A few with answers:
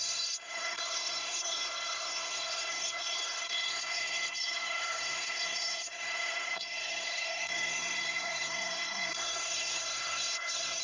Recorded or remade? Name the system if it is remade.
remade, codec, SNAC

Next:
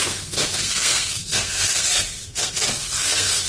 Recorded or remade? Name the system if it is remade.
remade, codec, SNAC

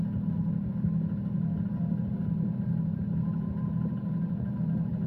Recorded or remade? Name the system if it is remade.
recorded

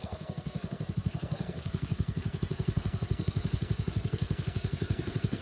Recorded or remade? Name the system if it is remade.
remade, codec, SNAC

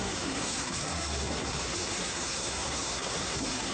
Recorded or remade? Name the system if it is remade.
remade, codec, SNAC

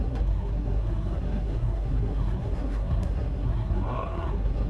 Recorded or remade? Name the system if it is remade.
remade, codec, SNAC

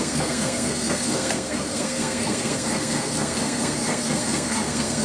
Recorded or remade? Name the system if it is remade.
remade, codec, SNAC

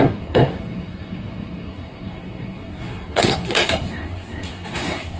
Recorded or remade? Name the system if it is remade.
remade, codec, SNAC